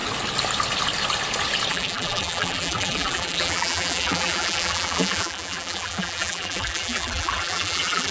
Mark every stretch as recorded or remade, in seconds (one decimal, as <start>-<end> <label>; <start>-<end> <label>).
0.0-1.7 recorded; 1.7-8.1 remade